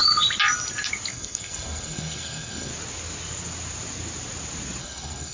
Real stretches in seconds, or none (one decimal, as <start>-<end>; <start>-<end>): 0.0-1.1; 2.7-4.8